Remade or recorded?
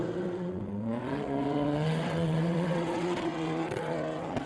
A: remade